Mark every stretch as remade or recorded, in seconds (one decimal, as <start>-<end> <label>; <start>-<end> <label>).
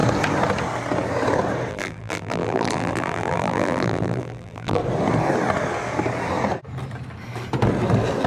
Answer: 0.0-1.7 recorded; 1.7-4.8 remade; 4.8-8.3 recorded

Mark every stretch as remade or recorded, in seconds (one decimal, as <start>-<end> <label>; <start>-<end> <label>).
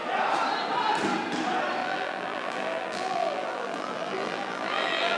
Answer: 0.0-1.8 recorded; 1.8-5.2 remade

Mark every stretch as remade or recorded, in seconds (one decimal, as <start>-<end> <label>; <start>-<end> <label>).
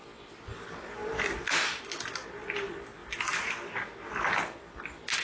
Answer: 0.0-5.2 recorded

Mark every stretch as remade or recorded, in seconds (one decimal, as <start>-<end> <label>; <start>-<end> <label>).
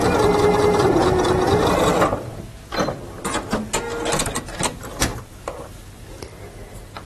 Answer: 0.0-5.1 recorded; 5.1-5.7 remade; 5.7-7.0 recorded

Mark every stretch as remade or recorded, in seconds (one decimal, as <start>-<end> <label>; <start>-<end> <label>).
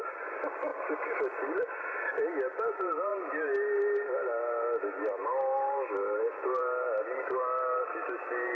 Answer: 0.0-8.5 recorded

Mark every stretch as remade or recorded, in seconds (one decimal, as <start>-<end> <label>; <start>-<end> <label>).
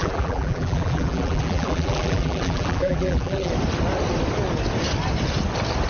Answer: 0.0-3.5 remade; 3.5-5.9 recorded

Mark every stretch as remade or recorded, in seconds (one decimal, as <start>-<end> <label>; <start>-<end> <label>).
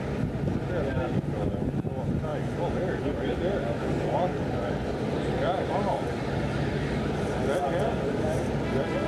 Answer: 0.0-9.1 recorded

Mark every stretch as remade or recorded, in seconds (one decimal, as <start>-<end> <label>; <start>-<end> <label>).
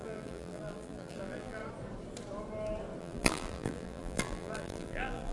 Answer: 0.0-1.6 remade; 1.6-3.0 recorded; 3.0-5.3 remade